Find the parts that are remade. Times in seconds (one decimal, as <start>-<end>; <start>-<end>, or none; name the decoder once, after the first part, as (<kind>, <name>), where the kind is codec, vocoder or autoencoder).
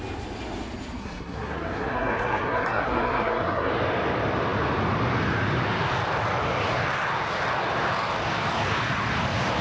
1.0-3.7 (codec, SNAC)